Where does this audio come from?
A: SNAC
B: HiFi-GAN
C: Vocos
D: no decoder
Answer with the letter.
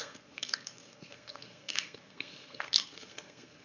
A